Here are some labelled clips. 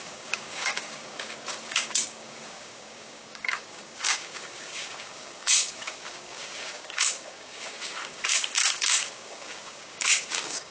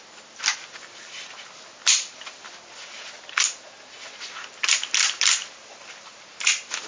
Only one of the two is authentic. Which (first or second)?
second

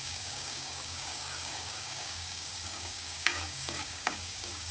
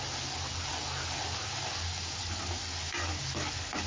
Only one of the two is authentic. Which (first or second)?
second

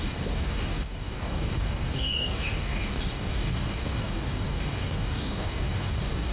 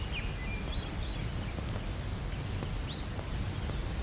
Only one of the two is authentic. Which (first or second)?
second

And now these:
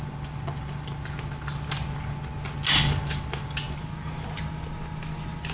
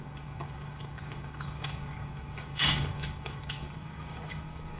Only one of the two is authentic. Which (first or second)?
first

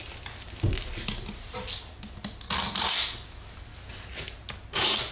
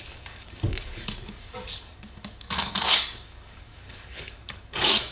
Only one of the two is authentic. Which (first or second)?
first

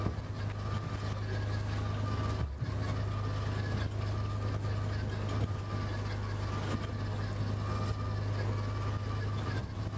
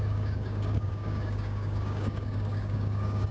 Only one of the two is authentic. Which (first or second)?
first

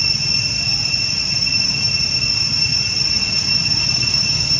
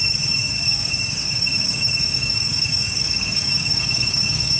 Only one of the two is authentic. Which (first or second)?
first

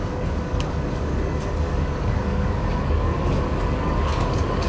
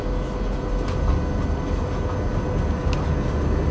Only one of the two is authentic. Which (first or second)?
second